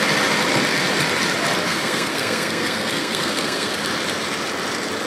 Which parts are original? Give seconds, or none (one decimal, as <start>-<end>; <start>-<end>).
0.0-1.7; 3.7-5.1